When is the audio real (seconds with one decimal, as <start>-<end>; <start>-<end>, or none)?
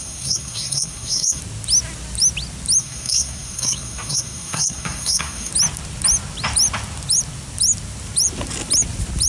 1.4-2.8; 5.5-9.3